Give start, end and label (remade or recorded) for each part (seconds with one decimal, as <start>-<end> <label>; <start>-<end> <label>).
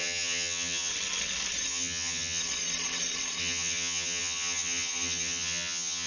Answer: 0.0-0.9 remade; 0.9-1.7 recorded; 1.7-2.4 remade; 2.4-3.4 recorded; 3.4-6.1 remade